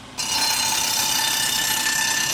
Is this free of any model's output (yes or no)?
yes